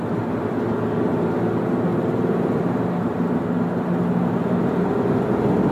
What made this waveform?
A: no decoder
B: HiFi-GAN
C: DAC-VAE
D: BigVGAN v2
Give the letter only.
A